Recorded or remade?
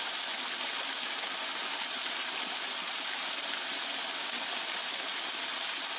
recorded